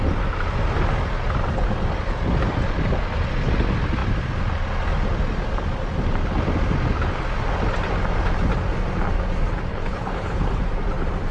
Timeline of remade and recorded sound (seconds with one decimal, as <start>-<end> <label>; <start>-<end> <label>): 0.0-9.7 recorded; 9.7-10.7 remade; 10.7-11.3 recorded